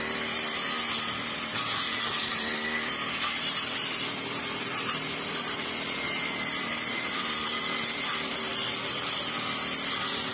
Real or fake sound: fake